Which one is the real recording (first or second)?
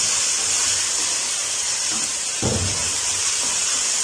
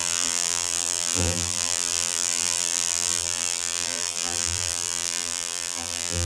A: first